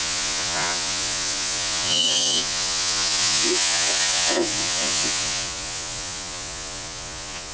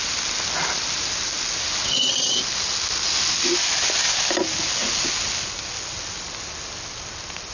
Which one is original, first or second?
second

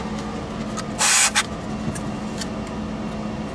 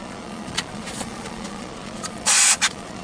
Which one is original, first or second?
first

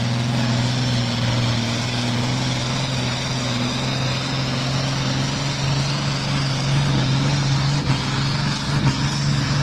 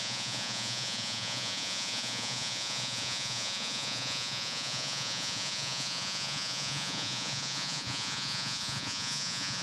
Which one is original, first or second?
first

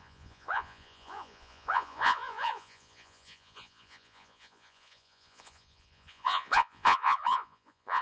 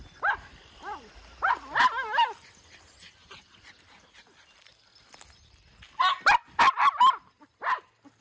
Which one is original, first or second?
second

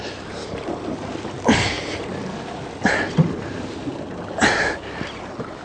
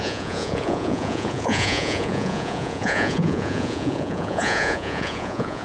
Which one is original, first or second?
first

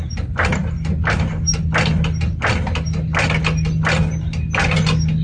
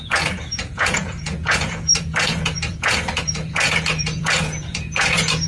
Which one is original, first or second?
first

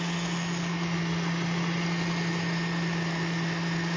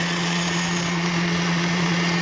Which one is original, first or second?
first